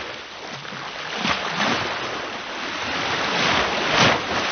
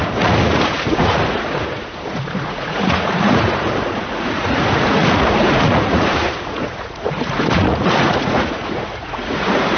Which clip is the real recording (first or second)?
first